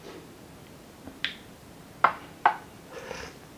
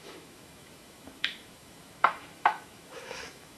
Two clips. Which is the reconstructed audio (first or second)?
second